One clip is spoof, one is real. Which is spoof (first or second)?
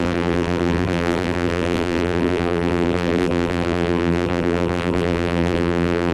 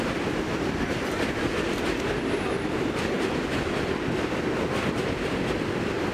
first